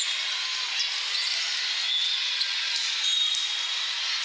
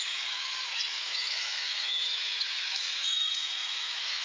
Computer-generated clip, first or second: second